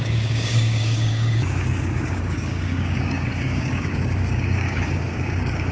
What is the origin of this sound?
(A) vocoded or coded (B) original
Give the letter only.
A